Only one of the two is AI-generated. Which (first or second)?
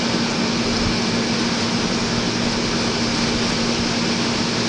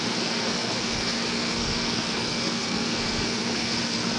second